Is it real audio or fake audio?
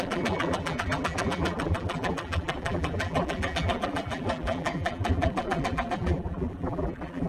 fake